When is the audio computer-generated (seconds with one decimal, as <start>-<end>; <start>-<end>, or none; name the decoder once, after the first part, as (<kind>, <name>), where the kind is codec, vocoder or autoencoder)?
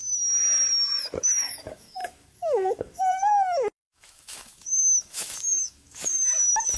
1.2-6.8 (autoencoder, DAC-VAE)